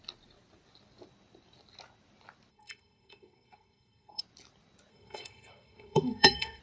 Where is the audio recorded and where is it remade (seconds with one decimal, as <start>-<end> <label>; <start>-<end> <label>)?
0.0-2.5 recorded; 2.5-4.2 remade; 4.2-4.9 recorded; 4.9-6.6 remade